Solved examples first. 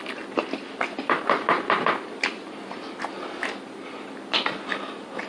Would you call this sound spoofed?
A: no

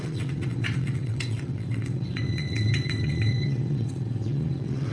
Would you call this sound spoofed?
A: yes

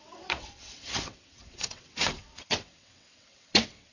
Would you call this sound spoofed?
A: yes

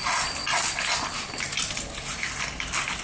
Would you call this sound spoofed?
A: no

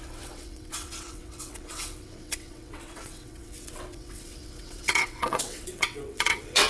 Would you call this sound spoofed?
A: yes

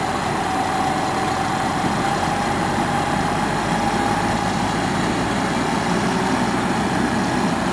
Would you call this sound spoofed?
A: no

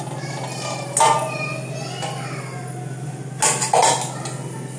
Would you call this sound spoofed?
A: no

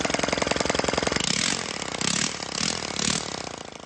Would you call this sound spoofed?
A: no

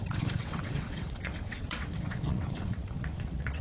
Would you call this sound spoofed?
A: yes